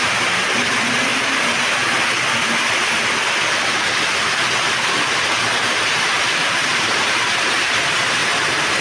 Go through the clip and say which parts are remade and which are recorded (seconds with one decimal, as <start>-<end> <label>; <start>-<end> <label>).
0.0-1.1 remade; 1.1-6.0 recorded; 6.0-8.2 remade; 8.2-8.8 recorded